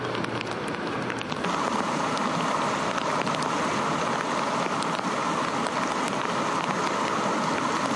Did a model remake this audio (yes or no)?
no